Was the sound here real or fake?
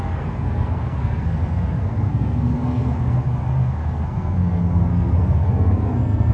fake